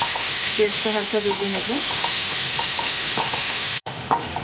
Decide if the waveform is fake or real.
fake